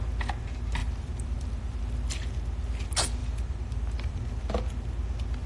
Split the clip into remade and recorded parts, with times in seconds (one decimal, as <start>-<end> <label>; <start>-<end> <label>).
0.0-0.8 recorded; 0.8-1.8 remade; 1.8-3.2 recorded; 3.2-4.4 remade; 4.4-5.5 recorded